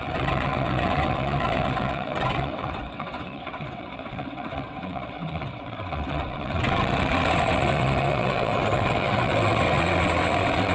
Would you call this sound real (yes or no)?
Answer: no